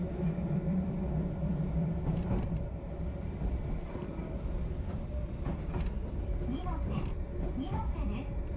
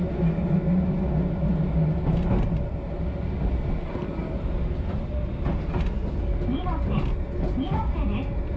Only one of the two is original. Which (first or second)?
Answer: second